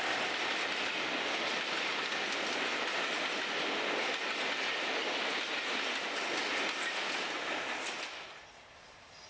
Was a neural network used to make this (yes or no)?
no